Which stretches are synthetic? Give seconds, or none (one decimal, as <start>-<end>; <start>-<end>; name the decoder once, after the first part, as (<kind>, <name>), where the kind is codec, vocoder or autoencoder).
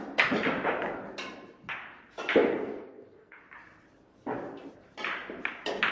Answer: 2.5-3.4 (codec, SNAC)